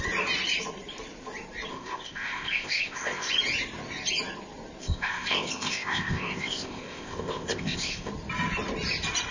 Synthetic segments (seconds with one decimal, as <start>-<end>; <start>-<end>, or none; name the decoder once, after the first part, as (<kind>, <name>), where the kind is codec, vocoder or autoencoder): 1.7-3.3 (codec, ZipCodec); 4.8-8.1